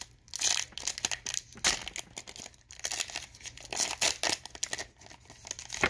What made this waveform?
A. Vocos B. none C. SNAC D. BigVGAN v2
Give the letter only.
B